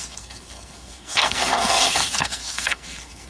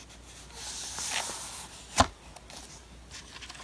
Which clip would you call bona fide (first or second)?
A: second